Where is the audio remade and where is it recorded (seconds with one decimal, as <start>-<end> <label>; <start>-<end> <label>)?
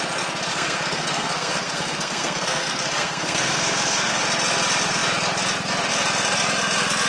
0.0-0.5 recorded; 0.5-4.2 remade; 4.2-7.1 recorded